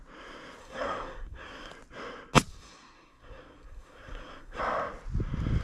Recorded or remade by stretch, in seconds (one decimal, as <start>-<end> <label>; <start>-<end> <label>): 0.0-0.6 recorded; 0.6-1.7 remade; 1.7-2.5 recorded; 2.5-4.6 remade; 4.6-5.6 recorded